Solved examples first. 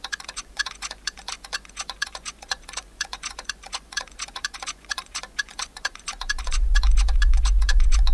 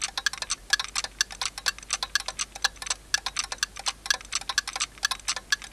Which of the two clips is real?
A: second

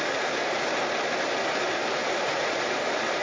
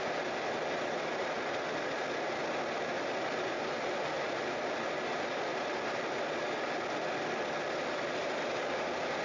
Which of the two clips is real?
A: second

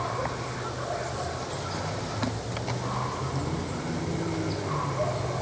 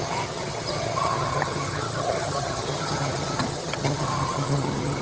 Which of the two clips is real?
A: first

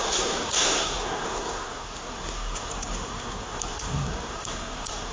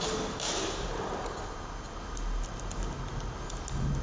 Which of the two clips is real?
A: second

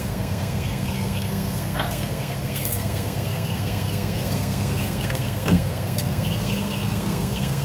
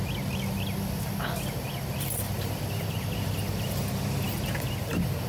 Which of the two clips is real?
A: second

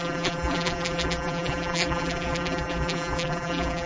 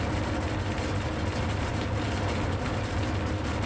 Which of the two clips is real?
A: second